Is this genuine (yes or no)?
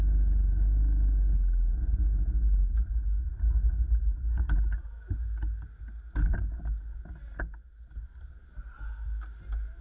yes